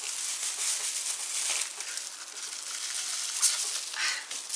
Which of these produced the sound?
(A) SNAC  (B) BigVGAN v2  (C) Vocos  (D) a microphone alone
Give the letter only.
D